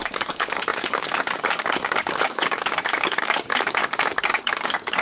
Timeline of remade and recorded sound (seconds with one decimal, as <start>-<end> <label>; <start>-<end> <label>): 0.0-5.0 remade